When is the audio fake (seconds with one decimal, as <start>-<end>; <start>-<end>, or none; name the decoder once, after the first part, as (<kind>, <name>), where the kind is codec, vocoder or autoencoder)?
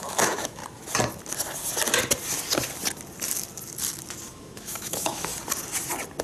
0.0-0.6 (autoencoder, DAC-VAE); 4.3-5.3